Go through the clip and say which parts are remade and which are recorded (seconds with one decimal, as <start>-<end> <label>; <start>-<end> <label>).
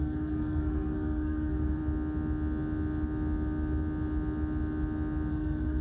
0.0-1.8 remade; 1.8-5.3 recorded; 5.3-5.8 remade